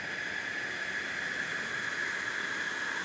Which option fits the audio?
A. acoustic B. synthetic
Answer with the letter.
A